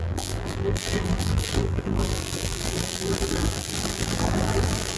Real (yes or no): no